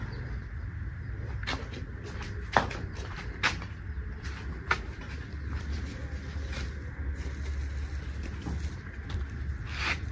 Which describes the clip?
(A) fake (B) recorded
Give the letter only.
B